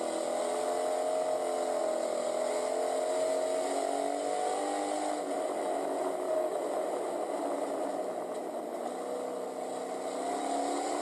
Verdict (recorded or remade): recorded